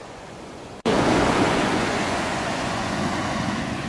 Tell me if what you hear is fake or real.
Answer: fake